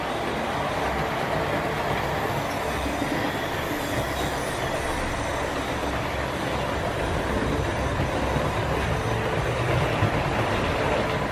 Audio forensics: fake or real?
real